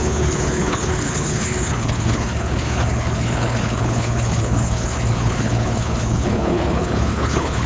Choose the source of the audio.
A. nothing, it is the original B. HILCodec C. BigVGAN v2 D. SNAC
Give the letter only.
B